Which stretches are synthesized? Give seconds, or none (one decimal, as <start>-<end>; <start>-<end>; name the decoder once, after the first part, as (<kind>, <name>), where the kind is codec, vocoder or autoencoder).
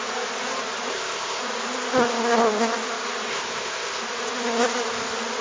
0.9-1.4 (codec, ZipCodec); 3.3-4.0